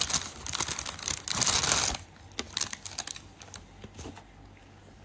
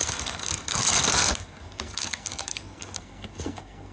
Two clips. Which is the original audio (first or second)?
first